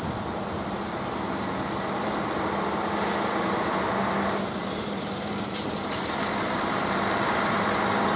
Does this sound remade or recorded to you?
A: recorded